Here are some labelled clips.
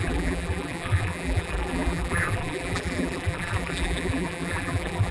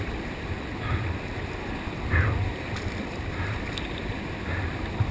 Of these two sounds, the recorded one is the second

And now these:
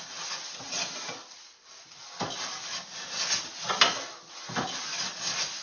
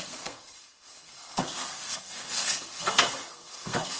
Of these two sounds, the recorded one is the first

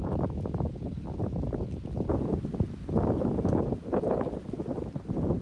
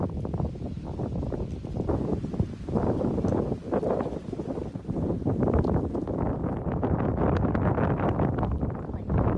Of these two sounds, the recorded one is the first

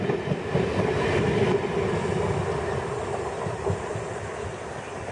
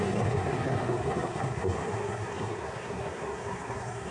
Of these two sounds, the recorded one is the first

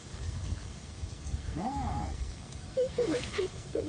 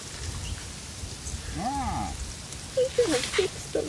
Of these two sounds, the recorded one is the second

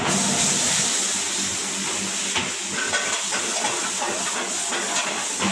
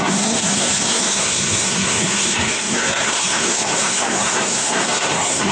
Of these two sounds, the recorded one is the first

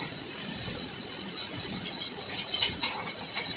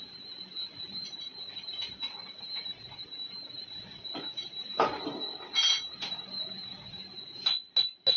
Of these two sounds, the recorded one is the second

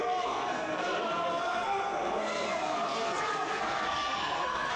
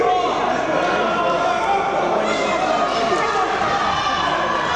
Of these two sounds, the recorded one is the second